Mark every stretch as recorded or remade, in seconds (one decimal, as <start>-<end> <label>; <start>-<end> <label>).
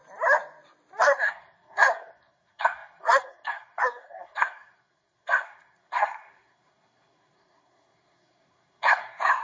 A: 0.0-1.0 recorded; 1.0-9.4 remade